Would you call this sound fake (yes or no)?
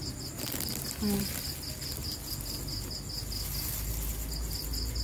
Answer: no